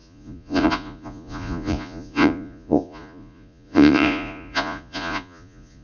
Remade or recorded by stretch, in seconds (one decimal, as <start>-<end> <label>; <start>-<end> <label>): 0.0-5.8 remade